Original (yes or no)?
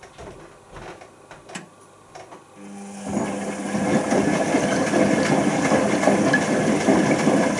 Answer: yes